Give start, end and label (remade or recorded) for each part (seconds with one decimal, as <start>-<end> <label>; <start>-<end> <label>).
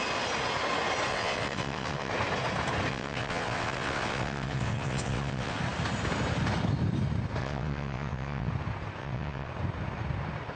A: 0.0-1.1 recorded; 1.1-2.1 remade; 2.1-2.9 recorded; 2.9-5.6 remade; 5.6-7.4 recorded; 7.4-8.5 remade; 8.5-9.0 recorded; 9.0-9.5 remade; 9.5-10.6 recorded